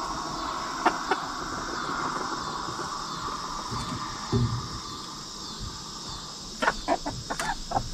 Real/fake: real